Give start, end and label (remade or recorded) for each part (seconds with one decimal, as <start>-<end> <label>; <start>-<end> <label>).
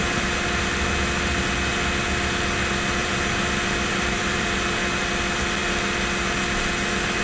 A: 0.0-3.0 recorded; 3.0-4.5 remade; 4.5-7.2 recorded